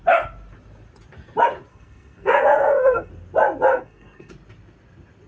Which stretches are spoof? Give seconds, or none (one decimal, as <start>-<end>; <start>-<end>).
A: 1.7-3.1; 3.7-4.3